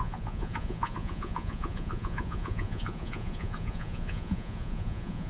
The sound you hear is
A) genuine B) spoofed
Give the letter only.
B